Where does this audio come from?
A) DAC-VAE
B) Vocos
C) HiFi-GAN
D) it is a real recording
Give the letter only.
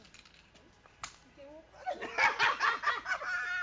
D